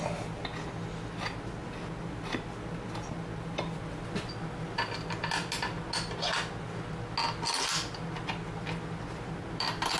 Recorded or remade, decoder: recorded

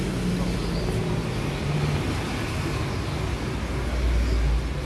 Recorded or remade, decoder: recorded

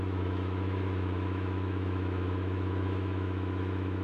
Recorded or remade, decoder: remade, autoencoder, DAC-VAE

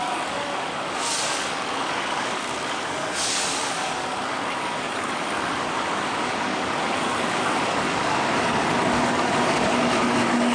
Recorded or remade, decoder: remade, codec, DAC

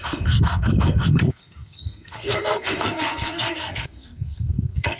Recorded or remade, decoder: remade, codec, SNAC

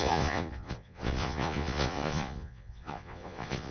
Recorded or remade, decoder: remade, vocoder, Vocos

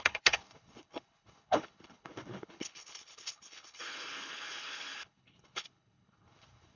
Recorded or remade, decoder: remade, codec, HILCodec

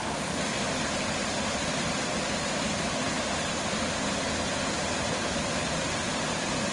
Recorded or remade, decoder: recorded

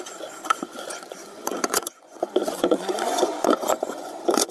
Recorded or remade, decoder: remade, vocoder, Vocos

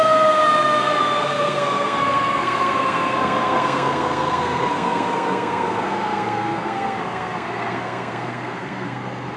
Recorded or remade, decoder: remade, codec, SNAC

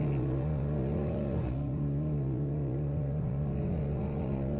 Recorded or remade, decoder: remade, vocoder, Vocos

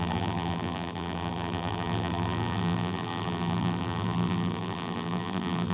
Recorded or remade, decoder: remade, vocoder, BigVGAN v2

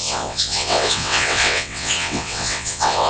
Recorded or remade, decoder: remade, vocoder, WaveNeXt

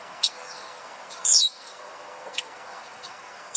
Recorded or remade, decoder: remade, codec, SNAC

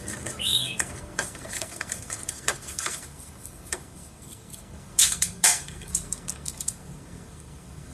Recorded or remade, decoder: remade, codec, SNAC